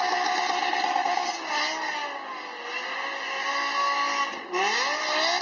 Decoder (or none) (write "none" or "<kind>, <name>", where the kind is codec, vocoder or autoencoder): none